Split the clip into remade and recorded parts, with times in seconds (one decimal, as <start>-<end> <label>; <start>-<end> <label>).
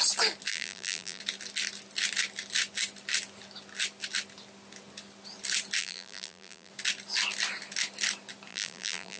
0.0-0.5 recorded; 0.5-1.2 remade; 1.2-5.8 recorded; 5.8-6.7 remade; 6.7-8.5 recorded; 8.5-9.2 remade